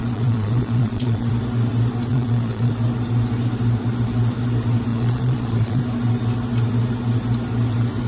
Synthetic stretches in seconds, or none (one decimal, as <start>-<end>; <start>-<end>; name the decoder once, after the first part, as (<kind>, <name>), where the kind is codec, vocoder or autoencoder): 0.0-1.3 (vocoder, Vocos); 2.1-2.7; 4.9-5.8

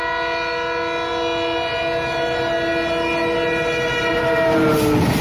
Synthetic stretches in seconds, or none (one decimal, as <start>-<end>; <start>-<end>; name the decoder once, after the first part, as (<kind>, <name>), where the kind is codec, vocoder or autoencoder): none

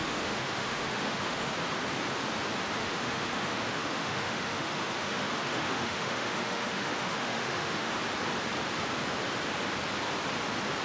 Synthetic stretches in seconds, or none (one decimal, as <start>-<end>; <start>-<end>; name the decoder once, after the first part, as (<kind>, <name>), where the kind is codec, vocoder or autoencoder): 0.0-1.5 (autoencoder, DAC-VAE); 2.8-7.9

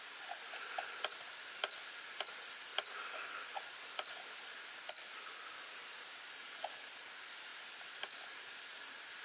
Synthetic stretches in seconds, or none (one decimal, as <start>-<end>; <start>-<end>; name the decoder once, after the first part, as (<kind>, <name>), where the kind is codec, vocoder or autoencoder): none

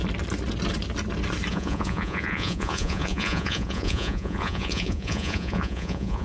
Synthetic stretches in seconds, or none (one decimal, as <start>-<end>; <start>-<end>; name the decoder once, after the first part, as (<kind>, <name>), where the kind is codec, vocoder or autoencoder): 1.5-6.2 (vocoder, Vocos)

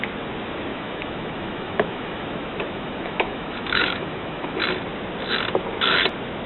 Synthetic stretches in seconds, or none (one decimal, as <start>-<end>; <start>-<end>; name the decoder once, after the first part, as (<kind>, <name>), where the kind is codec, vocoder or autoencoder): 0.7-4.6 (autoencoder, DAC-VAE)

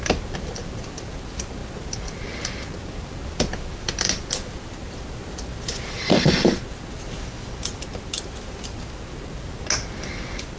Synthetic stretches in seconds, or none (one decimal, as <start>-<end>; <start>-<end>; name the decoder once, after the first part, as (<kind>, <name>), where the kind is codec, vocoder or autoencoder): none